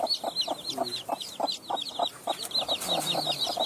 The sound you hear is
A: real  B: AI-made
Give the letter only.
A